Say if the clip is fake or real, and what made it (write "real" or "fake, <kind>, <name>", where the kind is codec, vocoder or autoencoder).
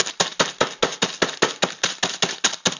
real